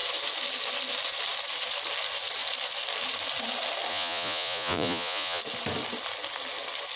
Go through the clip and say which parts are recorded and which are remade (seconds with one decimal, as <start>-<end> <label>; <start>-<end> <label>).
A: 0.0-3.9 recorded; 3.9-5.4 remade; 5.4-7.0 recorded